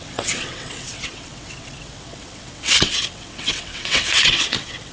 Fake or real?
fake